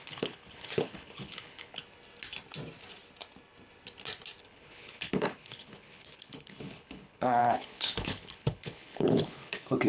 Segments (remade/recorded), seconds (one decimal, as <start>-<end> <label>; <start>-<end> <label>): 0.0-1.8 remade; 1.8-4.4 recorded; 4.4-9.9 remade